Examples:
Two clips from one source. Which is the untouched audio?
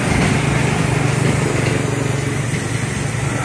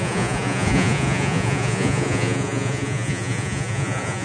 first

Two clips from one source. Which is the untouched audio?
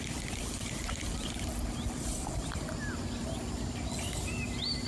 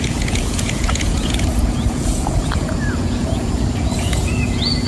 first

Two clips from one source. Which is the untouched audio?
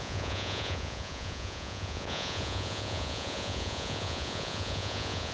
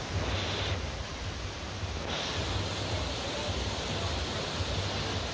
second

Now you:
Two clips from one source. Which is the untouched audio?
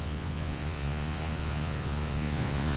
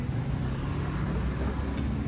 second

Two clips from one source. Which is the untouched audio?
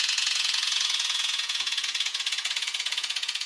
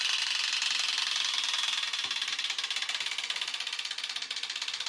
second